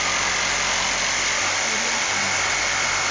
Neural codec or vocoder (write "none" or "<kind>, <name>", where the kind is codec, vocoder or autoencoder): none